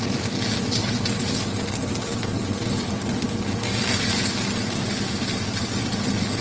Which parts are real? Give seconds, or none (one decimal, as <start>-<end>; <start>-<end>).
0.0-0.8; 1.3-6.4

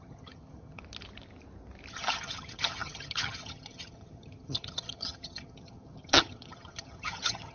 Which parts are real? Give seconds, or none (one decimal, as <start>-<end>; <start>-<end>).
0.8-1.9

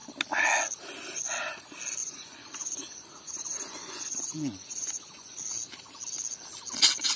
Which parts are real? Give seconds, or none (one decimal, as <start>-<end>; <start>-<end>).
0.0-2.0; 5.4-7.2

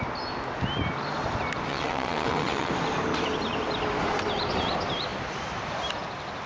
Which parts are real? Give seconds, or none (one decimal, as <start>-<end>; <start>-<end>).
0.0-1.7; 2.7-6.5

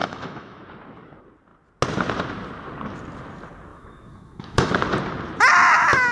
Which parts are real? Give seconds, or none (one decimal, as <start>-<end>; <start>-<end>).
0.6-3.7; 4.7-6.1